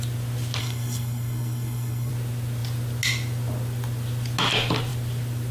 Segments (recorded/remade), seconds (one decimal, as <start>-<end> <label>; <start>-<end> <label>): 0.0-0.6 recorded; 0.6-2.1 remade; 2.1-5.5 recorded